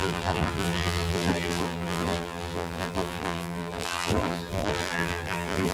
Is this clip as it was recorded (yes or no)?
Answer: no